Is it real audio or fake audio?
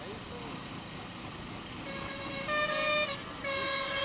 real